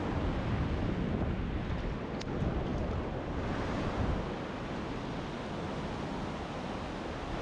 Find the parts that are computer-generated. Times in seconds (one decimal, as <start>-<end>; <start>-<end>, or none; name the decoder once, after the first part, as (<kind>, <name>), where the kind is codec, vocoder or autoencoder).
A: none